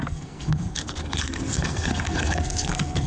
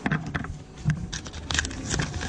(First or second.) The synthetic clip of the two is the first